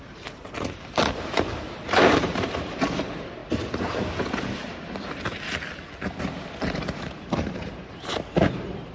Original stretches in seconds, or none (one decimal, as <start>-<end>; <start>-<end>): 3.4-6.2